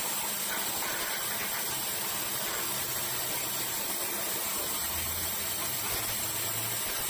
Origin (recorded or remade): recorded